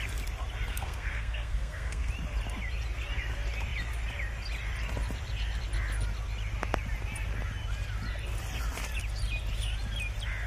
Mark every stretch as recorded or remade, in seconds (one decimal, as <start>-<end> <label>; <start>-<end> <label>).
0.0-0.7 recorded; 0.7-2.1 remade; 2.1-10.5 recorded